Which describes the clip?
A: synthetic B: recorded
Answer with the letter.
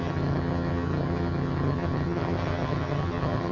A